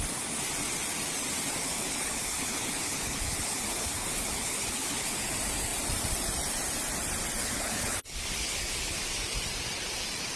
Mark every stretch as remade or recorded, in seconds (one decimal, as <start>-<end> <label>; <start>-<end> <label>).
0.0-1.6 recorded; 1.6-5.2 remade; 5.2-7.4 recorded; 7.4-9.0 remade; 9.0-10.4 recorded